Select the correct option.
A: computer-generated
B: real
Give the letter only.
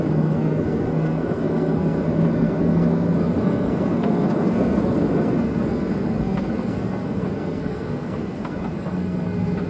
A